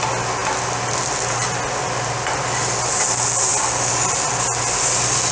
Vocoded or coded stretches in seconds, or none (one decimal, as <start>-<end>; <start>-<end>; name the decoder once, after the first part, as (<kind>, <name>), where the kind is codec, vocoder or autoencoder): none